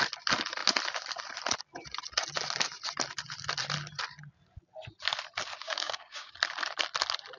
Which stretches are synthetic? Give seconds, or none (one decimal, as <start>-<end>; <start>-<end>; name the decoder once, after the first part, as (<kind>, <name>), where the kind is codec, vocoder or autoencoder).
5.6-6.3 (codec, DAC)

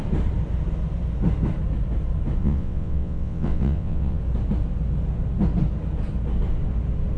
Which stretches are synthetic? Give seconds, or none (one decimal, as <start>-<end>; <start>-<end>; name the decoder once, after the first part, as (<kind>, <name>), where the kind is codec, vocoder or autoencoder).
2.4-4.2 (vocoder, WaveNeXt)

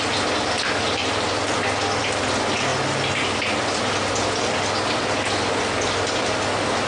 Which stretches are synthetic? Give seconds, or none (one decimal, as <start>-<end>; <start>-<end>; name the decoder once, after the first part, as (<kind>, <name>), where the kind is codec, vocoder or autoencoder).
none

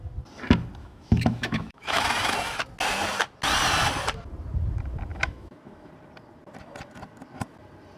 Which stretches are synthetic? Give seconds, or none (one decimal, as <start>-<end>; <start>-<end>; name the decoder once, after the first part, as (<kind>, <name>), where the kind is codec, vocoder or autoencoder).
0.8-2.0 (autoencoder, DAC-VAE); 5.1-5.9